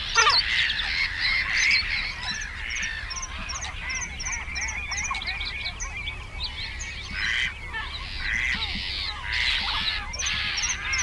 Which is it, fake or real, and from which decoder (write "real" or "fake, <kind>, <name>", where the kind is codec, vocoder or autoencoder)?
real